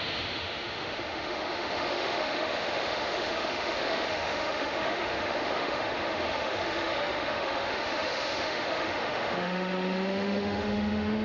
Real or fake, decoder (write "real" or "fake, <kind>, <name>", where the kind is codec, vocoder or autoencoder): fake, autoencoder, DAC-VAE